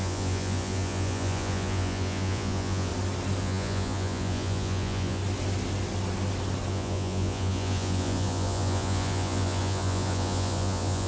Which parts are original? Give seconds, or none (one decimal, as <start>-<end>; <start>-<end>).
2.9-3.4; 5.2-6.7